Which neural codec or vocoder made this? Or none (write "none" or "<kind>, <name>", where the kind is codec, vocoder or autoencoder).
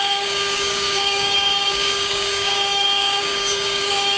codec, DAC